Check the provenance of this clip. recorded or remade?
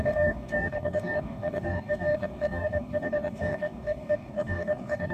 remade